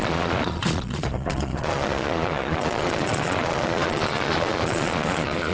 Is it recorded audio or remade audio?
remade